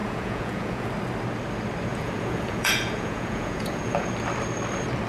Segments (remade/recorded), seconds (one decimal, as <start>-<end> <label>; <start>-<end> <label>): 0.0-0.9 remade; 0.9-1.9 recorded; 1.9-4.1 remade; 4.1-5.1 recorded